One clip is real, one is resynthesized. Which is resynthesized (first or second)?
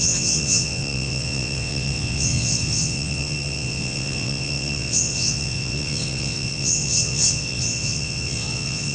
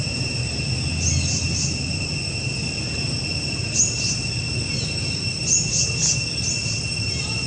first